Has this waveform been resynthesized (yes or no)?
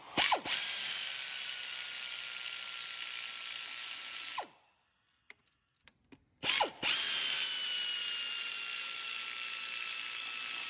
no